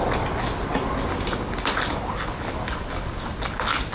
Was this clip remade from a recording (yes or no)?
no